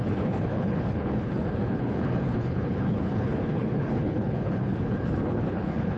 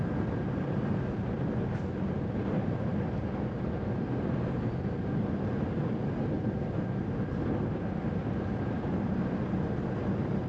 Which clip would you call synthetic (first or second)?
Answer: first